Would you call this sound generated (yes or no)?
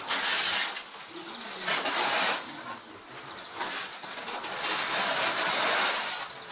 no